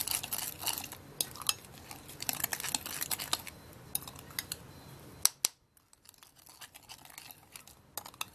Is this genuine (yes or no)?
yes